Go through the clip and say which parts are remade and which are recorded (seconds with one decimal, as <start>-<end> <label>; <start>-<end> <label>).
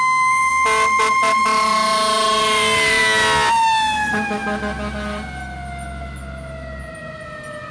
0.0-0.5 remade; 0.5-1.0 recorded; 1.0-3.0 remade; 3.0-6.8 recorded; 6.8-7.7 remade